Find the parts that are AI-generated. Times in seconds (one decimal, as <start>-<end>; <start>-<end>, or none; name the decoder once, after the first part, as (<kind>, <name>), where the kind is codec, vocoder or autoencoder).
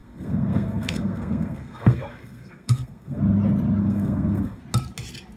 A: 0.0-3.2 (codec, SNAC); 3.8-4.6